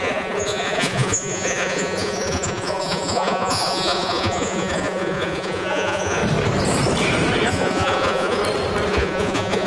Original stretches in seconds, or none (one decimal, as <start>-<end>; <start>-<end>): 6.2-7.5; 8.4-8.9